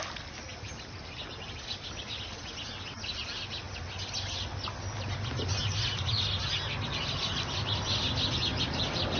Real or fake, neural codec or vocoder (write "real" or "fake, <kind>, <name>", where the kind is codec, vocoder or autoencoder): real